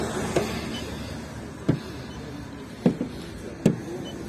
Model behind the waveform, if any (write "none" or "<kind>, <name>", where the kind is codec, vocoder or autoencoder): none